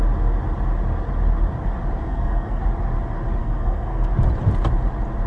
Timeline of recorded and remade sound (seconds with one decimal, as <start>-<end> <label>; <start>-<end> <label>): 0.0-2.0 recorded; 2.0-2.6 remade; 2.6-3.4 recorded; 3.4-4.1 remade; 4.1-5.3 recorded